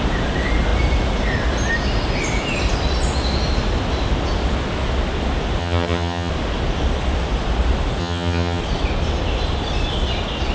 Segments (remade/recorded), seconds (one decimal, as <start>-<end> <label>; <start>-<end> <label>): 0.0-5.6 recorded; 5.6-6.3 remade; 6.3-8.0 recorded; 8.0-8.6 remade; 8.6-10.5 recorded